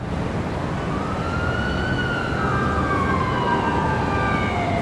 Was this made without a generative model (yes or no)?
yes